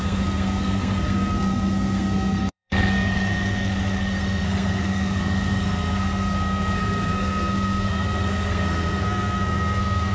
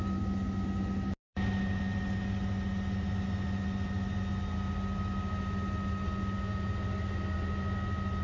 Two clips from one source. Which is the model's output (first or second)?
first